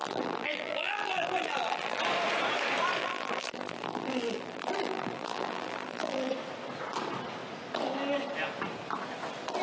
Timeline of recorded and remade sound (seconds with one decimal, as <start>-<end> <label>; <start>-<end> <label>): 0.0-2.0 remade; 2.0-3.0 recorded; 3.0-6.3 remade; 6.3-9.6 recorded